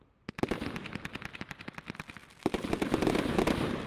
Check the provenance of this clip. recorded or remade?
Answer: recorded